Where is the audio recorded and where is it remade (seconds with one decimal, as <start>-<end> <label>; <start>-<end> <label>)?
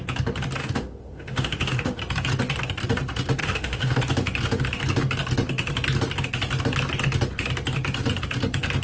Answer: 0.0-0.6 recorded; 0.6-2.0 remade; 2.0-3.4 recorded; 3.4-4.0 remade; 4.0-8.8 recorded